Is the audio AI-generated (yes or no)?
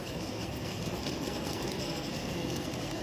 yes